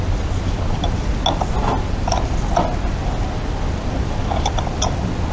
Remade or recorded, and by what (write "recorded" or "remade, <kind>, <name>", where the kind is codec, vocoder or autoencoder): recorded